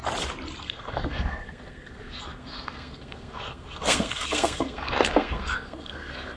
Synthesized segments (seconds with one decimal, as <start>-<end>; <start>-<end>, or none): 0.6-6.4